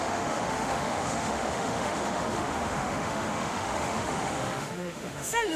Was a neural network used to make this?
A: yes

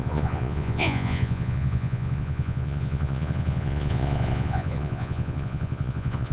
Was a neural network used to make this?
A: yes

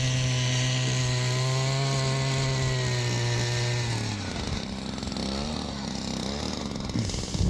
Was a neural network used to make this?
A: no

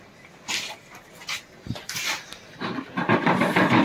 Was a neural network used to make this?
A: no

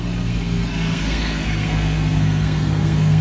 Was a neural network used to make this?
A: yes